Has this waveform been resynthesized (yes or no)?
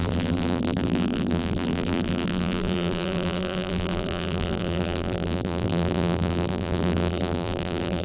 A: yes